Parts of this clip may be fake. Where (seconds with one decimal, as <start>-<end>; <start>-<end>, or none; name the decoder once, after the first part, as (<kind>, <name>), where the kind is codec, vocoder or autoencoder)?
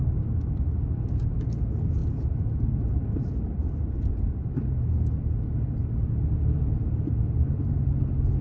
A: 2.0-2.9 (vocoder, Vocos)